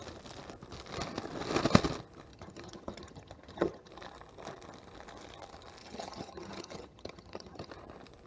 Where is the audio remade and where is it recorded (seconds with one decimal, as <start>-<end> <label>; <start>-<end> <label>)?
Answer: 0.0-2.3 recorded; 2.3-3.9 remade; 3.9-5.8 recorded; 5.8-7.7 remade; 7.7-8.3 recorded